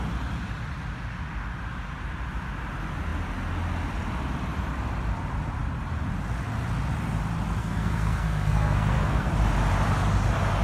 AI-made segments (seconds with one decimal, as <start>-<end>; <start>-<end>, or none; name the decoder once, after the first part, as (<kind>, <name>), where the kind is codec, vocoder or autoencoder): 7.6-9.3 (codec, SNAC)